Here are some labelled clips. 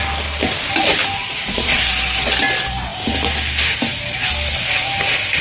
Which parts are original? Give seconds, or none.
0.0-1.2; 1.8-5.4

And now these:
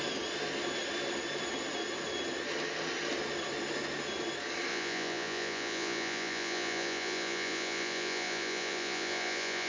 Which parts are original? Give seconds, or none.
0.0-4.7

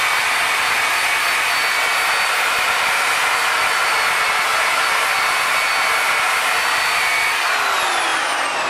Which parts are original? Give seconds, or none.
0.0-8.7

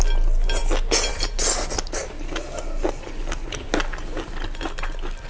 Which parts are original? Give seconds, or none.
0.0-5.3